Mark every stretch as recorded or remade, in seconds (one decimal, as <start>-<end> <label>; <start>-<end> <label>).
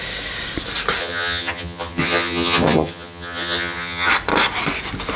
0.0-1.0 recorded; 1.0-4.1 remade; 4.1-5.2 recorded